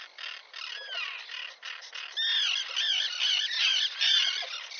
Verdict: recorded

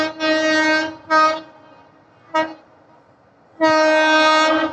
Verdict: recorded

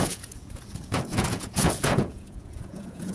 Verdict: remade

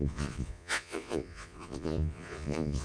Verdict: remade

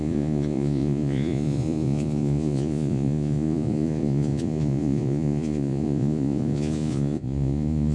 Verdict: remade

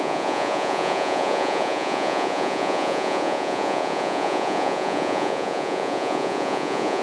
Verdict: remade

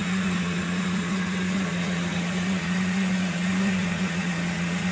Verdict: remade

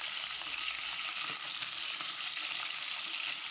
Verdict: recorded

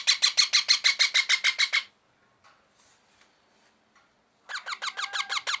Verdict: recorded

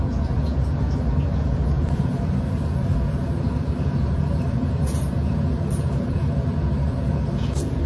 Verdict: remade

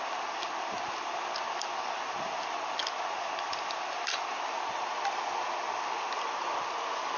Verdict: recorded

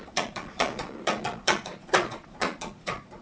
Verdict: remade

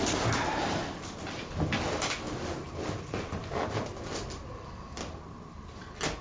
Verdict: recorded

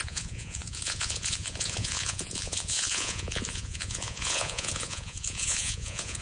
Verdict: remade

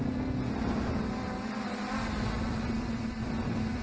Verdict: recorded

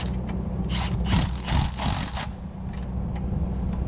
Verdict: recorded